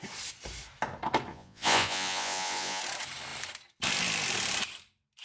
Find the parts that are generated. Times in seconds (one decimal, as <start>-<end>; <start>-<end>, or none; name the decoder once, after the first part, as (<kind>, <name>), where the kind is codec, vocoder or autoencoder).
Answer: 1.3-2.8 (vocoder, Vocos)